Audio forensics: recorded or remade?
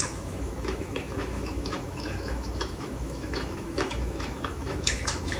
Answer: remade